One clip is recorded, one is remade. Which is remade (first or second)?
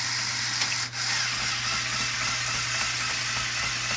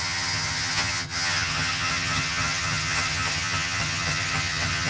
second